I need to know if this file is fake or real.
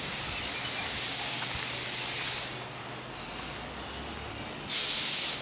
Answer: real